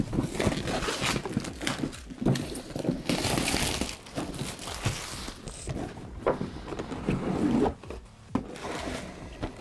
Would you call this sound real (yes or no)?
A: yes